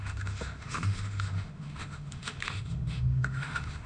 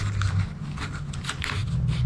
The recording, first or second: second